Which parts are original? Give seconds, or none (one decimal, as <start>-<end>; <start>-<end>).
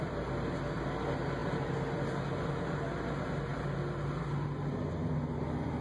0.0-5.8